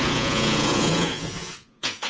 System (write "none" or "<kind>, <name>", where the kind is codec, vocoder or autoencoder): vocoder, Vocos